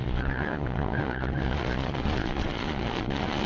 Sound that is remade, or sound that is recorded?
remade